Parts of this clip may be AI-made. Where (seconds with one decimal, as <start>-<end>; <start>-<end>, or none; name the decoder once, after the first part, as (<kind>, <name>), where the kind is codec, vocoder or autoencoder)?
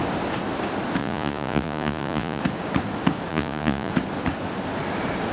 1.0-2.4 (vocoder, Vocos); 3.3-3.9